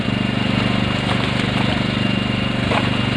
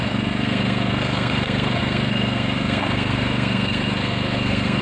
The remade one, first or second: second